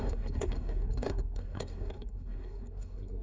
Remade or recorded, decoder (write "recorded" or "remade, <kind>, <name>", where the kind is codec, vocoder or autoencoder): remade, codec, SNAC